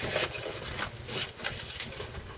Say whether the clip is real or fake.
real